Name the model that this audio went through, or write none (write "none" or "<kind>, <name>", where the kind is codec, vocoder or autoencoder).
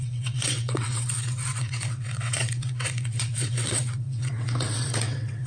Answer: vocoder, WaveNeXt